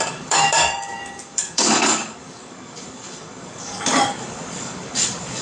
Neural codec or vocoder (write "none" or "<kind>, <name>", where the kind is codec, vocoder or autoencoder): codec, DAC